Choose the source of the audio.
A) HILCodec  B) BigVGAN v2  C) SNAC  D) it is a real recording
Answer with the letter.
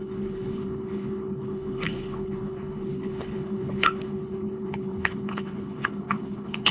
A